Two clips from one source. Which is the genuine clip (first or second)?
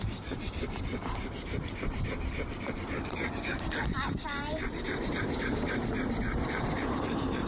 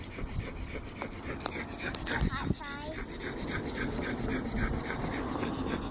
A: second